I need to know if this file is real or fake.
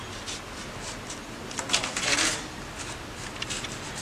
real